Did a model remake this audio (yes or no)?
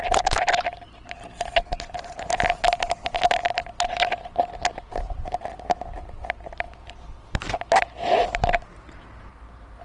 no